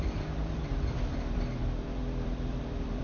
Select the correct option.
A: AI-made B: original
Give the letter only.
A